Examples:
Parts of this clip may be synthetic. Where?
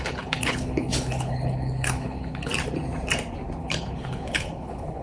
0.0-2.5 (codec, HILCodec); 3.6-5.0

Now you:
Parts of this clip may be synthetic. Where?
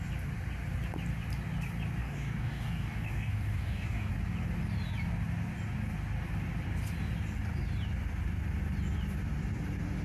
2.0-4.1 (codec, DAC)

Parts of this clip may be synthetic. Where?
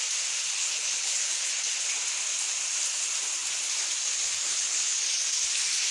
0.5-1.5 (codec, HILCodec); 4.5-5.0